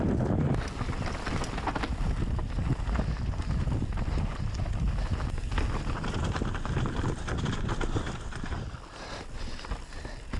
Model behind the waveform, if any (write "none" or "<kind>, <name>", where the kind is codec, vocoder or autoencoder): none